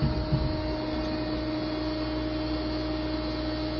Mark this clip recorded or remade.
recorded